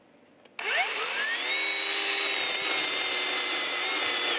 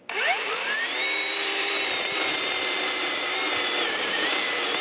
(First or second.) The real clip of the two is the first